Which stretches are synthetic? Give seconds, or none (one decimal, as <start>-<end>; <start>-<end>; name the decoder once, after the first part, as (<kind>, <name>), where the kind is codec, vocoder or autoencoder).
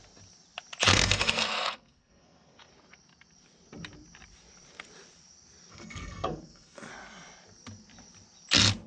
0.9-2.7 (codec, SNAC); 5.7-6.9